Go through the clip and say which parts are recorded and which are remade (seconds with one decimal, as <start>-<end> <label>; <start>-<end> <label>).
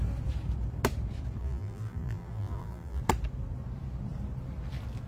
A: 0.0-1.4 recorded; 1.4-3.0 remade; 3.0-5.1 recorded